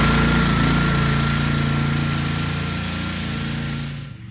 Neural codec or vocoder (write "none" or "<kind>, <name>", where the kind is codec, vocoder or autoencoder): none